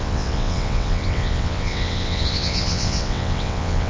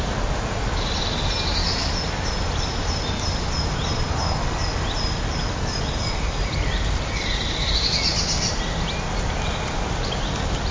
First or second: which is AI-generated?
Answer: first